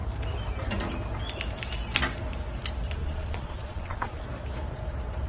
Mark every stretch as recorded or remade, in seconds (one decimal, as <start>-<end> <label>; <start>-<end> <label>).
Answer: 0.0-3.0 recorded; 3.0-4.2 remade; 4.2-5.3 recorded